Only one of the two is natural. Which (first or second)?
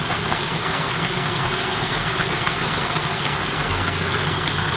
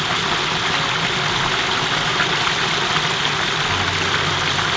second